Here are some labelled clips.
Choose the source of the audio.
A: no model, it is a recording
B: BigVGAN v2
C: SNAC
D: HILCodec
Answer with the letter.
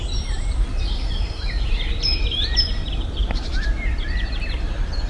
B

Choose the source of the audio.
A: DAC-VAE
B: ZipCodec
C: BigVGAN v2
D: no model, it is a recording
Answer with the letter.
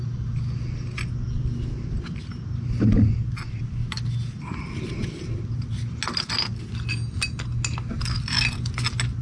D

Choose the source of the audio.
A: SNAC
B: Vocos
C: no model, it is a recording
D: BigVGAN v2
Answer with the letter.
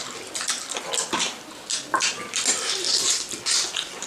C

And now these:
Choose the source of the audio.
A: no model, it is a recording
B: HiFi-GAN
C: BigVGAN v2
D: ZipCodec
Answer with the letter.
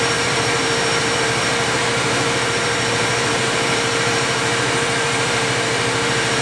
C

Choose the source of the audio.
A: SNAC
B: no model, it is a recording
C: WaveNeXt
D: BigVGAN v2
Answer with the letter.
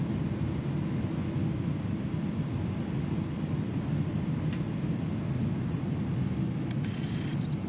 B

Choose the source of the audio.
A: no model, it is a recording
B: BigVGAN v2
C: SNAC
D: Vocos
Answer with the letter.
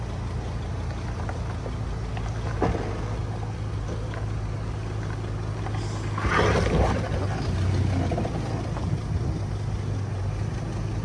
A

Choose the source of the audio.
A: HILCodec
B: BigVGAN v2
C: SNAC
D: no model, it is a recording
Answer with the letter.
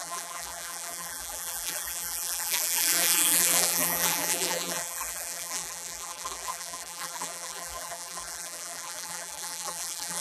B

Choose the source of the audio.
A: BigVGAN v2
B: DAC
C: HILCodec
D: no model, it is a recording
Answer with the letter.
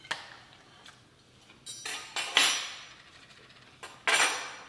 D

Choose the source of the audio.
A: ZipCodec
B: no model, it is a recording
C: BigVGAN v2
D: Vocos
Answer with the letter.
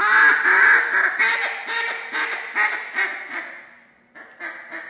B